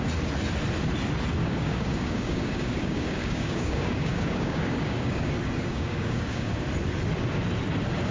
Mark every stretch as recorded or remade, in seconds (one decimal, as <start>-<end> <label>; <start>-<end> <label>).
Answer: 0.0-1.4 recorded; 1.4-5.3 remade; 5.3-5.7 recorded; 5.7-6.5 remade; 6.5-8.1 recorded